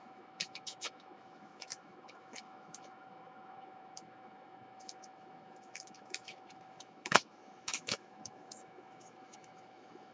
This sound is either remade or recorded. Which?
remade